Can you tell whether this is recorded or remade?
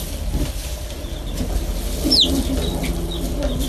recorded